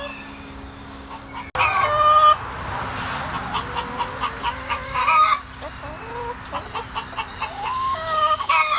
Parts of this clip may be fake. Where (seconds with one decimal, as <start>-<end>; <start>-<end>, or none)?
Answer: 0.0-1.2; 4.4-5.0; 7.5-8.8